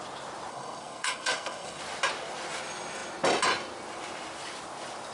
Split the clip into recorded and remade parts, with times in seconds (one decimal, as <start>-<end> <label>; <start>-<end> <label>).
0.0-0.5 recorded; 0.5-1.8 remade; 1.8-5.1 recorded